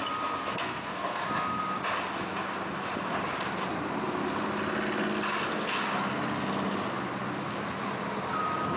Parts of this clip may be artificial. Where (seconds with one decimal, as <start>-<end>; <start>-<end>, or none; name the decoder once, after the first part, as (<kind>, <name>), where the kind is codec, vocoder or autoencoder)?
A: 0.4-1.2 (codec, SNAC)